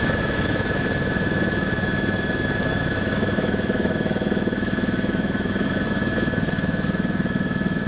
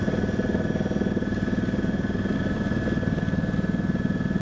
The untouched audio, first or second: second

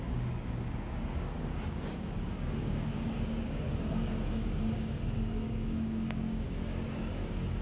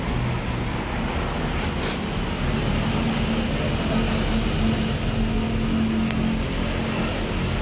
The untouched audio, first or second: second